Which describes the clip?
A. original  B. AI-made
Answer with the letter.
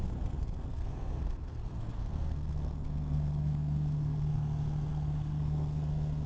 B